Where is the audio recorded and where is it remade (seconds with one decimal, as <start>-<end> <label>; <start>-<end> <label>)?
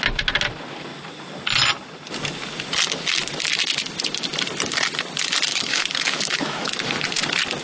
0.0-5.5 recorded; 5.5-6.9 remade; 6.9-7.6 recorded